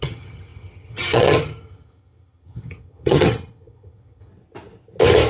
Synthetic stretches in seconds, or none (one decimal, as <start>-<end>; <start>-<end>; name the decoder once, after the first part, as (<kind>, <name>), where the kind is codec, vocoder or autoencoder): 0.0-4.3 (vocoder, HiFi-GAN)

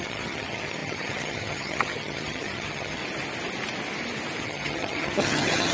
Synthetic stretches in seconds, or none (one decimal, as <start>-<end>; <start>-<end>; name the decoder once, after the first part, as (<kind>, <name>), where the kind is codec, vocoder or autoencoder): 0.0-3.0 (vocoder, HiFi-GAN); 4.4-5.7